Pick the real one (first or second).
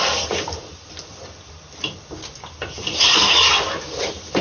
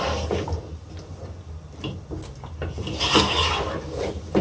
second